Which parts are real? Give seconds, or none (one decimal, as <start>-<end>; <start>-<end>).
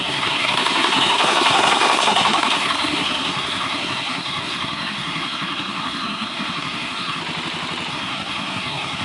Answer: 7.2-7.9